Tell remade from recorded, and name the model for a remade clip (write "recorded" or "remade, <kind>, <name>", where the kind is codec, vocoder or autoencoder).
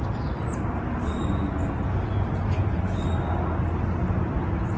recorded